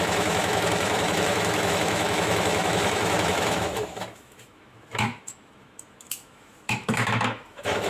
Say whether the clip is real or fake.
fake